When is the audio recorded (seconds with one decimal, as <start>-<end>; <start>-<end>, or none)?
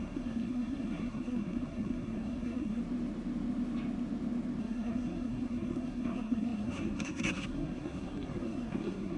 2.8-4.6